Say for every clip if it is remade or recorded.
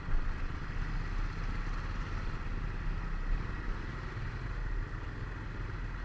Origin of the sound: recorded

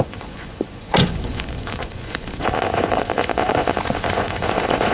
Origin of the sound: remade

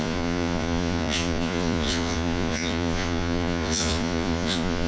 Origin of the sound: remade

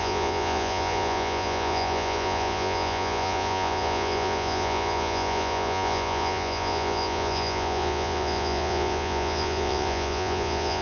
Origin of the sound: remade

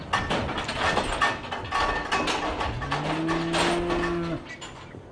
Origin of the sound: recorded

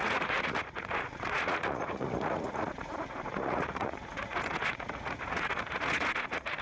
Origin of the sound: remade